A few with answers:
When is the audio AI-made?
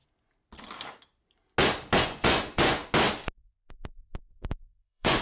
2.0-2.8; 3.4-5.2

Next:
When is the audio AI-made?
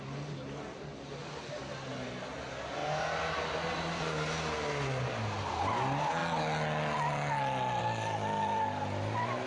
none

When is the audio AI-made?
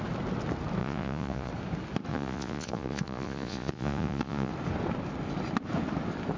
0.8-1.5; 2.1-4.5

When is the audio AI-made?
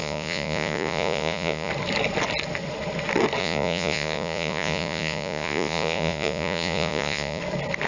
0.0-1.7; 3.4-7.4